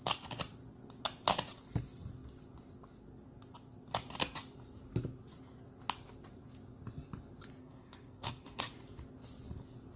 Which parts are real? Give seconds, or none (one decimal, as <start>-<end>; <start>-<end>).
0.0-7.6; 8.6-10.0